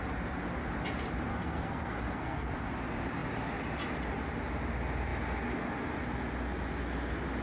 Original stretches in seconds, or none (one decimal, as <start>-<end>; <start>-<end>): 0.0-1.3; 2.5-7.4